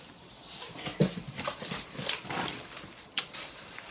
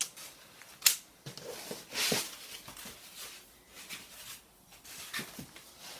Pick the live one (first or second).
second